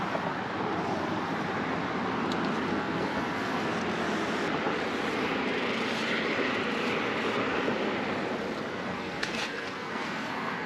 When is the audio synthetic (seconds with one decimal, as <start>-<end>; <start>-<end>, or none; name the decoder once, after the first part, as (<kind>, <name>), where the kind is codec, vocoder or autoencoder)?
2.7-3.7 (codec, SNAC); 8.7-10.7